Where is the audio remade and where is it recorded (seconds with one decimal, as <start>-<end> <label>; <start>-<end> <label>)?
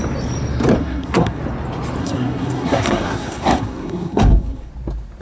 0.0-0.8 recorded; 0.8-1.4 remade; 1.4-2.0 recorded; 2.0-4.7 remade; 4.7-5.2 recorded